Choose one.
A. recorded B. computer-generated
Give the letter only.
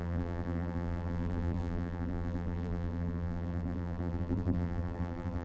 B